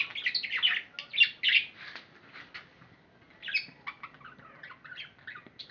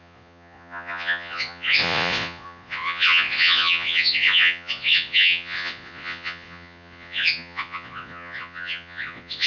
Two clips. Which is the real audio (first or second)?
first